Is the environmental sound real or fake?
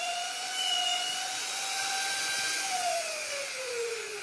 fake